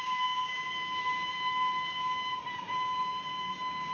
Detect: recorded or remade remade